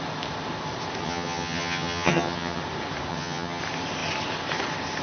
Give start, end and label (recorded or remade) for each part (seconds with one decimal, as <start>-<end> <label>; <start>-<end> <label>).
0.0-1.0 recorded; 1.0-2.6 remade; 2.6-3.1 recorded; 3.1-3.6 remade; 3.6-5.0 recorded